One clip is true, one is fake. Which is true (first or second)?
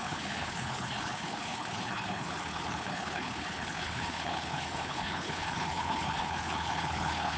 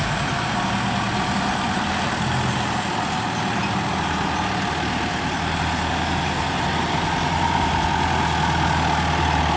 second